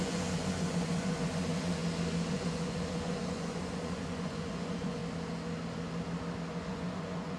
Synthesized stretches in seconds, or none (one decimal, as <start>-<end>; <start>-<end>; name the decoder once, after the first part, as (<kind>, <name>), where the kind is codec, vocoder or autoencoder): 0.0-1.8 (vocoder, Vocos); 2.3-5.0; 6.6-7.4